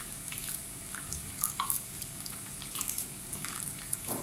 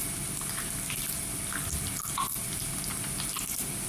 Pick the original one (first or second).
second